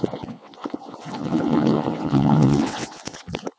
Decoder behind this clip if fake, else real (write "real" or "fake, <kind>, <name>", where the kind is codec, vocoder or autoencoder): fake, vocoder, WaveNeXt